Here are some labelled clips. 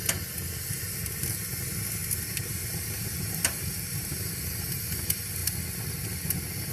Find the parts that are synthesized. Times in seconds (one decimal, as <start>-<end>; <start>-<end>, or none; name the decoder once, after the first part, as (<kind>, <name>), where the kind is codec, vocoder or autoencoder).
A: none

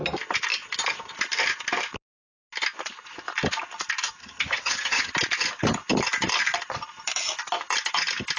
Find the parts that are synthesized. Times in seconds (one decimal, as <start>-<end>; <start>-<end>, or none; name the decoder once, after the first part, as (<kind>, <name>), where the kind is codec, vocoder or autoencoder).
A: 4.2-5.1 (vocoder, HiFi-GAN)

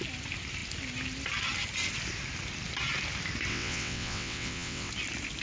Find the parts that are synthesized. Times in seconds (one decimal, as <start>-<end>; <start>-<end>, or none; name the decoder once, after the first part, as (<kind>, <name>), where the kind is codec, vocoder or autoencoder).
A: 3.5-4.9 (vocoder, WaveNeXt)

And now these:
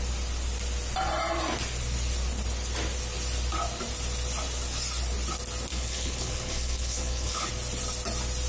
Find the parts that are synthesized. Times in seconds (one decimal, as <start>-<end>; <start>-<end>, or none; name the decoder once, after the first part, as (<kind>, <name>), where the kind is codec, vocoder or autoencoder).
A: 5.7-7.5 (codec, HILCodec)

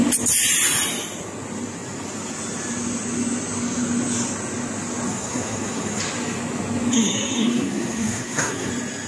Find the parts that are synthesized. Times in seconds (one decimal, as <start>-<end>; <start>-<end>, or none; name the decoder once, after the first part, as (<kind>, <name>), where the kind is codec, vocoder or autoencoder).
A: 5.1-6.0 (codec, SNAC); 6.9-8.7